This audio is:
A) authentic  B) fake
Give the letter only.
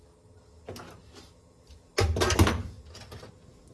A